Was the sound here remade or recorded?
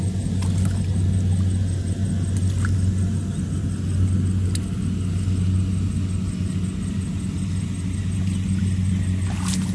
recorded